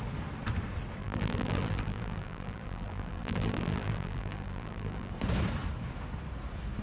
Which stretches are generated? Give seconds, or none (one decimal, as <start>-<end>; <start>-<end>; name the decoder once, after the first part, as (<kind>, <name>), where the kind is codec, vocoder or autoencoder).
1.0-5.1 (vocoder, BigVGAN v2)